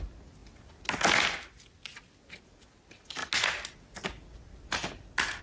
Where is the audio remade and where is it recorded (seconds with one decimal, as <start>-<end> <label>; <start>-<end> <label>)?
0.0-5.4 recorded